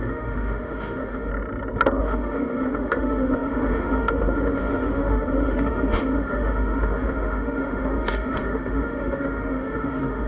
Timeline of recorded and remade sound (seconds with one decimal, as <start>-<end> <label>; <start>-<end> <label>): 0.0-1.3 remade; 1.3-2.0 recorded; 2.0-10.3 remade